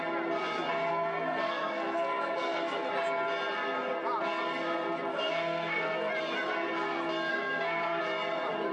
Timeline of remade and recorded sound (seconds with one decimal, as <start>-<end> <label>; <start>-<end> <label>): 0.0-0.9 recorded; 0.9-2.9 remade; 2.9-5.1 recorded; 5.1-6.1 remade; 6.1-7.3 recorded; 7.3-8.0 remade; 8.0-8.7 recorded